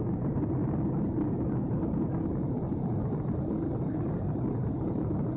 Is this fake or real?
real